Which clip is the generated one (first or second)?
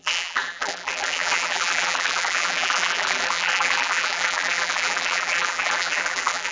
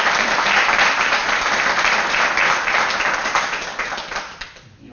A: first